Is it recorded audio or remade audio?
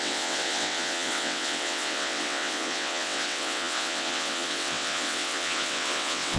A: remade